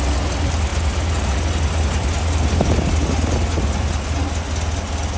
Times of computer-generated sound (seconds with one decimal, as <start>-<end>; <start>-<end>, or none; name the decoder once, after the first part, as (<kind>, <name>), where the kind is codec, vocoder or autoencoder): none